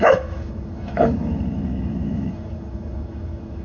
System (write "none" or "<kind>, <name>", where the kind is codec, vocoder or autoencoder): autoencoder, DAC-VAE